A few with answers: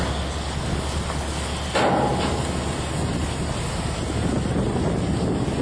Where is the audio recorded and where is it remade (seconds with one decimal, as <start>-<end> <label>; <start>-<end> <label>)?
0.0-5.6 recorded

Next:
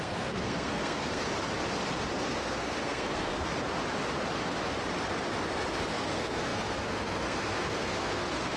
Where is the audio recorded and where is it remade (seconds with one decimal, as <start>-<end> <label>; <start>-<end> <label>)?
0.0-1.2 remade; 1.2-2.3 recorded; 2.3-3.5 remade; 3.5-5.9 recorded; 5.9-8.6 remade

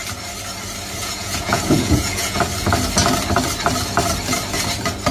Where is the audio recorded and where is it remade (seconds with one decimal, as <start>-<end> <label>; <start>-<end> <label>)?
0.0-1.0 recorded; 1.0-2.4 remade; 2.4-5.1 recorded

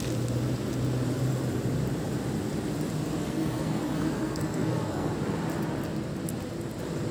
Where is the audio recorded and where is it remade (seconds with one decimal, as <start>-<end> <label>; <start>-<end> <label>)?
0.0-3.2 recorded; 3.2-5.1 remade; 5.1-7.1 recorded

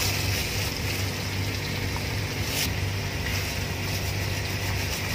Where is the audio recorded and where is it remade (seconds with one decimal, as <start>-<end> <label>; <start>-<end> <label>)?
0.0-5.1 recorded

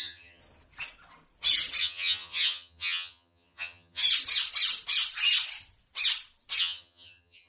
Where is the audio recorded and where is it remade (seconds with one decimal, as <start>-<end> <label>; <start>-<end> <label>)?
0.0-0.4 remade; 0.4-1.8 recorded; 1.8-4.0 remade; 4.0-6.6 recorded; 6.6-7.5 remade

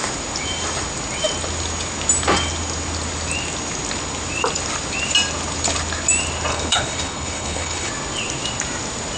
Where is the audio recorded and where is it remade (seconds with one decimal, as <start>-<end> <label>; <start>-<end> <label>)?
0.0-6.5 recorded; 6.5-7.9 remade; 7.9-9.2 recorded